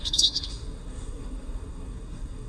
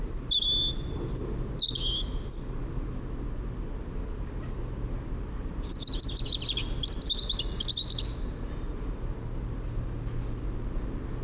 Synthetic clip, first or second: first